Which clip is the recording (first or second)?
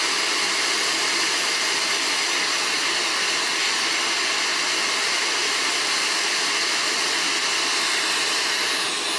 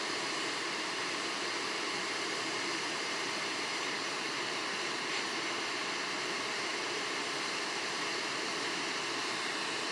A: first